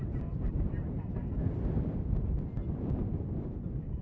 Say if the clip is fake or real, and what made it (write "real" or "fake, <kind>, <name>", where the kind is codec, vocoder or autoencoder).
real